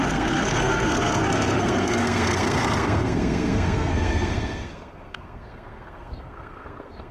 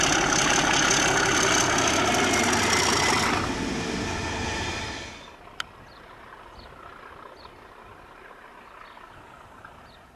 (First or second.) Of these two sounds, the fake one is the first